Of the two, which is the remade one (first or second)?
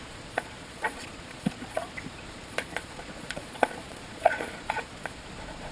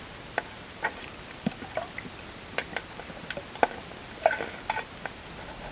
first